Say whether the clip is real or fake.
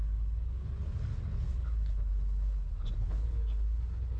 fake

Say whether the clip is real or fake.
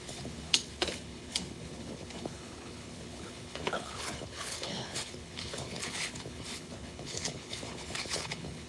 fake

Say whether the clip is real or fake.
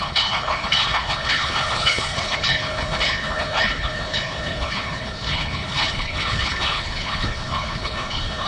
fake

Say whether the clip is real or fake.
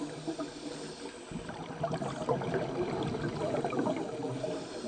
real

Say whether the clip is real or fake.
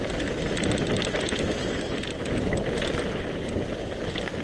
real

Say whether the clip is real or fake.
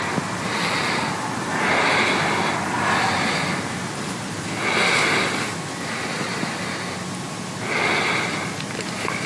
real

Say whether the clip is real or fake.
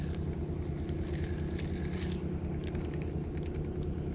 real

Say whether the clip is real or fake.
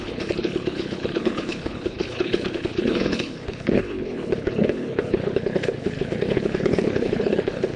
fake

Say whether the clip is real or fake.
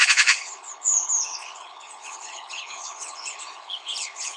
fake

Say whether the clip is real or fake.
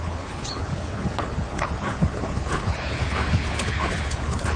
fake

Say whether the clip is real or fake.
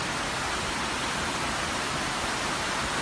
real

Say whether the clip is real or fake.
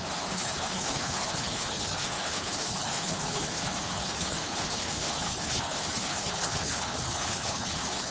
fake